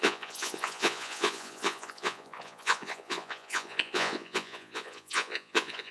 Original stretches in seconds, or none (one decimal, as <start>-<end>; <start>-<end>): none

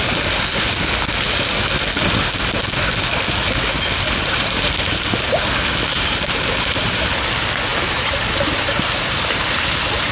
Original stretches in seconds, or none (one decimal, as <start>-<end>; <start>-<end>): 0.0-4.2; 5.0-5.9; 7.1-7.7

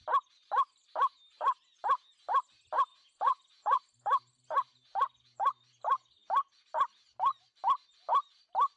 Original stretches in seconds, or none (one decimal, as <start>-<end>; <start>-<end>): 0.0-2.9; 3.8-8.8

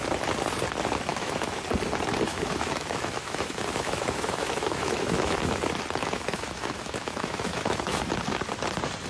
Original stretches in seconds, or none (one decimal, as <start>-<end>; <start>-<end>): 0.0-1.1; 1.6-2.3; 5.6-6.0; 8.1-9.1